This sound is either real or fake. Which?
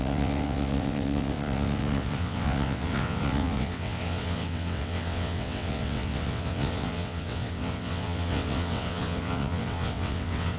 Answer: fake